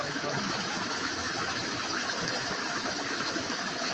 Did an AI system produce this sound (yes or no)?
yes